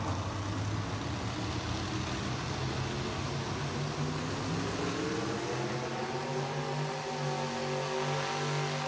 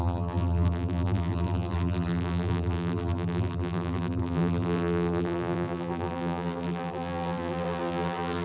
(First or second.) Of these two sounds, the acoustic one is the first